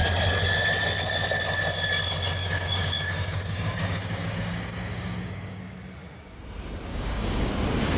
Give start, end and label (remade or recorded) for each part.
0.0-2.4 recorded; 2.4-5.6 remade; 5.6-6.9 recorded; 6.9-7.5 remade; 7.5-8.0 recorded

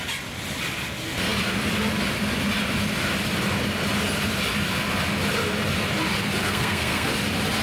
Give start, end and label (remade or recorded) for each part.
0.0-6.4 recorded; 6.4-7.1 remade; 7.1-7.6 recorded

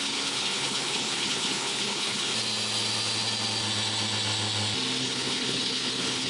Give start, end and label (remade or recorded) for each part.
0.0-2.3 remade; 2.3-5.0 recorded; 5.0-6.3 remade

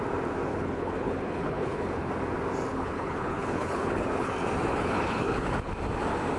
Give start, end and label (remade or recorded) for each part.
0.0-0.5 recorded; 0.5-2.1 remade; 2.1-2.7 recorded; 2.7-4.3 remade; 4.3-4.7 recorded; 4.7-5.7 remade; 5.7-6.4 recorded